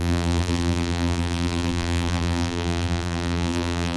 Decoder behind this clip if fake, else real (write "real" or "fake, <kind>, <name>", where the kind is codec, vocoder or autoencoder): fake, vocoder, BigVGAN v2